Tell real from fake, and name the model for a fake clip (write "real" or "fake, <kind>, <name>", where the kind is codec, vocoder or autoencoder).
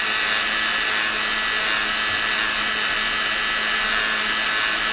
real